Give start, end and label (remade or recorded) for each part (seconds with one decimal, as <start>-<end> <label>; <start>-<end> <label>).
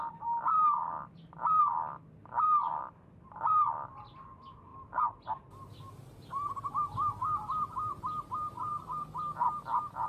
0.0-2.8 recorded; 2.8-4.0 remade; 4.0-4.7 recorded; 4.7-9.0 remade; 9.0-10.1 recorded